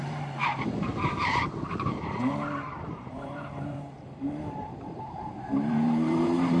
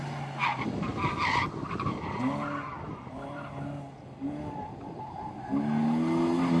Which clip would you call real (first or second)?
second